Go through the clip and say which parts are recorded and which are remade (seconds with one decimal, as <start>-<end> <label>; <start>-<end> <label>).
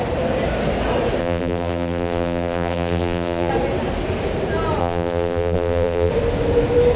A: 0.0-1.2 recorded; 1.2-3.5 remade; 3.5-4.8 recorded; 4.8-6.1 remade; 6.1-7.0 recorded